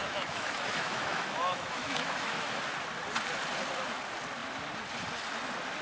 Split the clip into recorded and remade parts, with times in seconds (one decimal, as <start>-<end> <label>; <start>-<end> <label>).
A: 0.0-2.6 remade; 2.6-5.8 recorded